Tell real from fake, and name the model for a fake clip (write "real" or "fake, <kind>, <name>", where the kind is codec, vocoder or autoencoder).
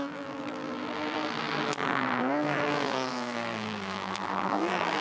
fake, vocoder, BigVGAN v2